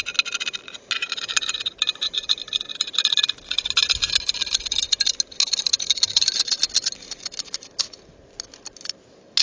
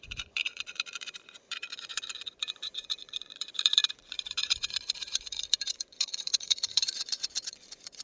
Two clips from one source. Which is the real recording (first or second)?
first